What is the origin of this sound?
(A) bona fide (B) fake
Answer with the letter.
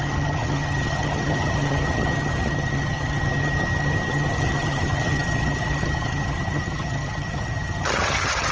B